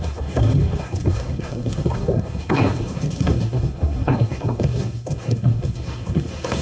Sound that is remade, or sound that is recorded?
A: remade